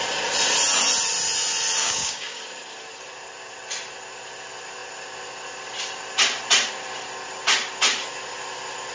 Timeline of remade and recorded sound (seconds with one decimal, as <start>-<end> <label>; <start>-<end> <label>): 0.0-1.8 recorded; 1.8-2.4 remade; 2.4-8.9 recorded